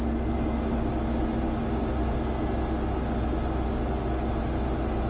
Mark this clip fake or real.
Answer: real